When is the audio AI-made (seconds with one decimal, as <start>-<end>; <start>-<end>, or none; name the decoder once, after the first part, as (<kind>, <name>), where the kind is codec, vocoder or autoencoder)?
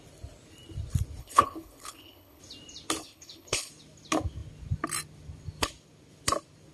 1.2-2.4 (codec, HILCodec); 3.0-3.7